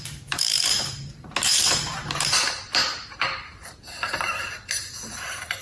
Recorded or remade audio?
remade